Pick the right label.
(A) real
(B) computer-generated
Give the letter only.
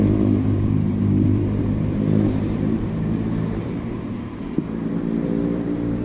B